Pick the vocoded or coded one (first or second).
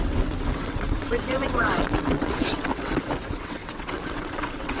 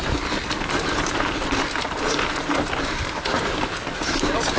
first